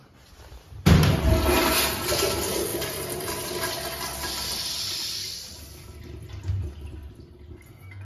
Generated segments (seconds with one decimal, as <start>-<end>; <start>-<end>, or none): 2.7-6.3; 7.0-7.5